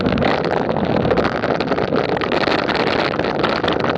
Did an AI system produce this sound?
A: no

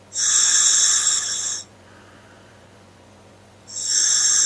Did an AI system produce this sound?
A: yes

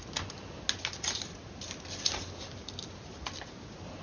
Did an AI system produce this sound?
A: no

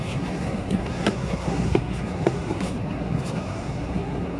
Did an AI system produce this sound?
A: yes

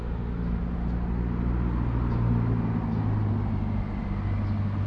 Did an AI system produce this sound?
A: no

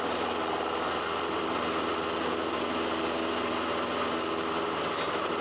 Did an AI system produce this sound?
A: no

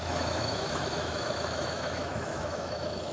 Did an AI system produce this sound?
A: yes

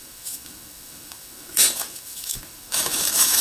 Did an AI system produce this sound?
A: yes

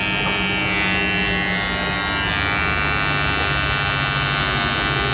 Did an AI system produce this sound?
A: no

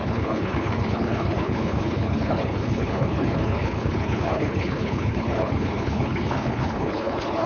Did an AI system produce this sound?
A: yes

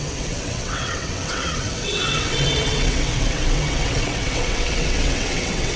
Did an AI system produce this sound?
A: yes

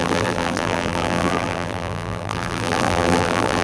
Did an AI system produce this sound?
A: yes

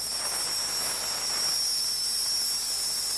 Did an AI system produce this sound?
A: no